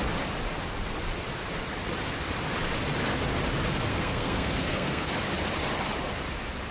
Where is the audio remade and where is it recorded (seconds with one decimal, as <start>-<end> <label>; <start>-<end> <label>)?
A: 0.0-3.9 recorded; 3.9-5.1 remade; 5.1-6.7 recorded